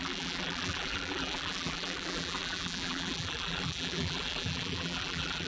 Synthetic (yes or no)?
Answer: yes